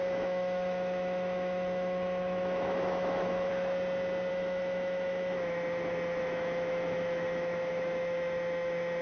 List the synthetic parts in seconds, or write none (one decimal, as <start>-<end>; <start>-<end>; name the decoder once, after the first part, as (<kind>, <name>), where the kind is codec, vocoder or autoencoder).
0.0-3.5 (autoencoder, DAC-VAE); 4.3-9.0